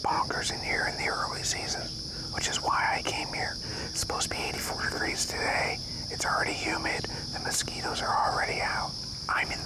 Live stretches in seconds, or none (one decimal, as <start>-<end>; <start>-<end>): 0.0-9.7

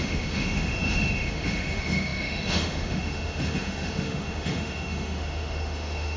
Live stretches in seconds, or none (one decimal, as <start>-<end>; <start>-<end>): none